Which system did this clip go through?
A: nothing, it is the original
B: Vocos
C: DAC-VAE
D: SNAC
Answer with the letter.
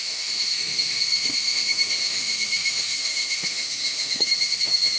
C